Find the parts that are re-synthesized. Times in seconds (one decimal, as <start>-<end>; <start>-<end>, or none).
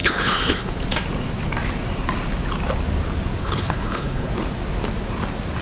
0.0-0.7; 3.4-4.3